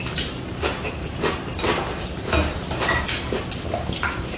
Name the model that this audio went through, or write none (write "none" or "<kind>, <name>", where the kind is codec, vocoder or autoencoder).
none